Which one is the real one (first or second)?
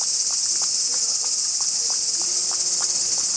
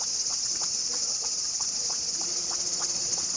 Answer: first